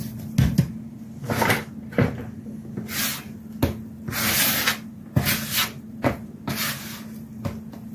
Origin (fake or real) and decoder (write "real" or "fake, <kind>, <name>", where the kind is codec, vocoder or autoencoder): real